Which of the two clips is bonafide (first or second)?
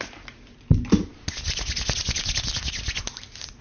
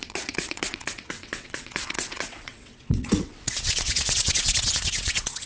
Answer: first